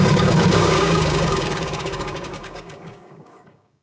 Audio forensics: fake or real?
fake